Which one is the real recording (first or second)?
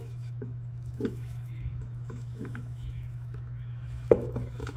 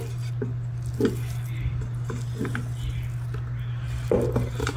second